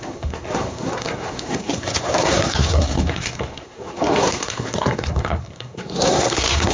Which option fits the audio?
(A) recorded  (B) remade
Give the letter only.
B